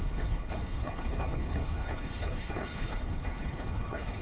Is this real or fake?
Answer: fake